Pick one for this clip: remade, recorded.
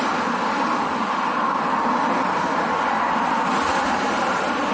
recorded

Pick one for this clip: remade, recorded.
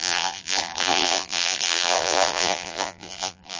remade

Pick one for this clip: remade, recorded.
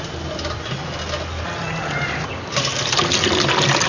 recorded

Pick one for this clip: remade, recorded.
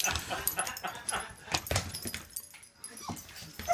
recorded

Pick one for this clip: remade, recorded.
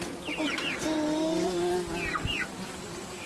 recorded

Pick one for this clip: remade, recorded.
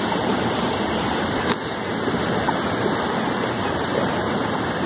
remade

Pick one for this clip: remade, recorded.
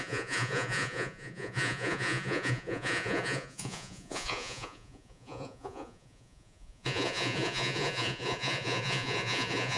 remade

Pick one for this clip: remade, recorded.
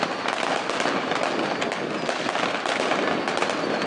recorded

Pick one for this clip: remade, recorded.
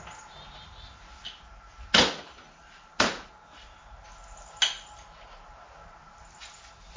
recorded